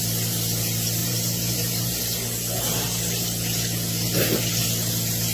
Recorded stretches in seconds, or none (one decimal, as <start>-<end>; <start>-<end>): 0.0-1.0; 2.0-5.3